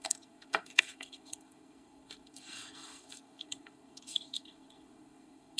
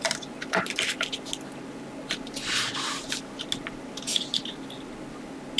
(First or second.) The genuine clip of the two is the second